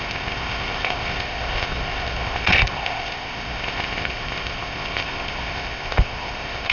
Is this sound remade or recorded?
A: remade